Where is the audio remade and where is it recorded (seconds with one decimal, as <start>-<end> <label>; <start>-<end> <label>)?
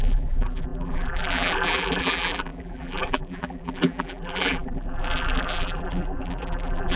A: 0.0-7.0 remade